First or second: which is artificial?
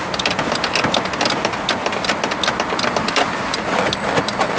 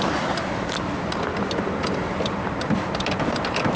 second